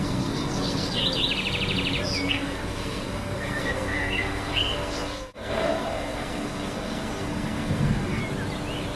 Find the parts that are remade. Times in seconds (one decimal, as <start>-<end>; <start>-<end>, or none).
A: 0.0-1.0; 2.3-8.2